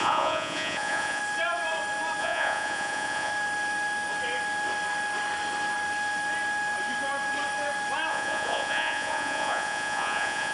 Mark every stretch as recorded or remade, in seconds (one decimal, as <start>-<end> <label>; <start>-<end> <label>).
0.0-1.2 remade; 1.2-2.2 recorded; 2.2-3.3 remade; 3.3-8.1 recorded; 8.1-10.5 remade